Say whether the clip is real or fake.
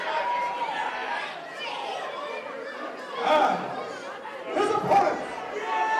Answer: real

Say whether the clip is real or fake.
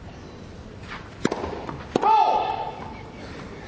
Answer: real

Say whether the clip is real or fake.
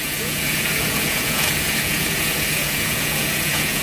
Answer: fake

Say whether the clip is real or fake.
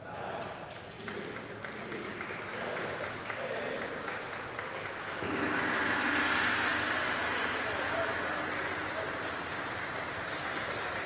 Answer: real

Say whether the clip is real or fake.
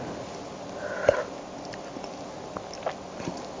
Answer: real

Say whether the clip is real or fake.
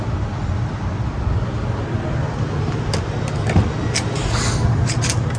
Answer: real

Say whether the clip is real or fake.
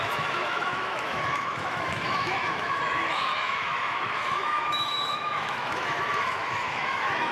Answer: fake